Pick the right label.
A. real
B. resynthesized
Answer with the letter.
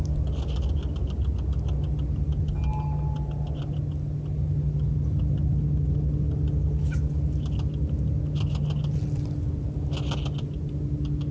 A